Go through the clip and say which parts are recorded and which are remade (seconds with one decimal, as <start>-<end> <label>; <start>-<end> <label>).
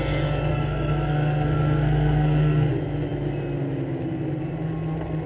0.0-0.5 recorded; 0.5-2.7 remade; 2.7-5.3 recorded